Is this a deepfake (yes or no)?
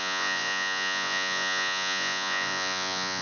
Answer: yes